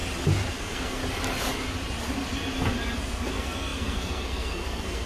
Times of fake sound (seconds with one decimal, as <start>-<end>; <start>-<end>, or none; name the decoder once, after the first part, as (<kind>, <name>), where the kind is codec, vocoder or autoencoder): 0.5-1.0 (codec, SNAC); 3.3-5.1